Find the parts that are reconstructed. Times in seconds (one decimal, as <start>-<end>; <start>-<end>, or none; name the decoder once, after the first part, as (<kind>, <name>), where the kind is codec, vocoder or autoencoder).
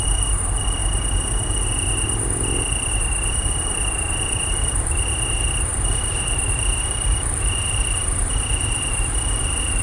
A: 0.0-0.8 (vocoder, BigVGAN v2); 2.9-9.8